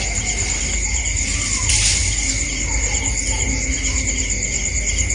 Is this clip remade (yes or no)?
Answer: no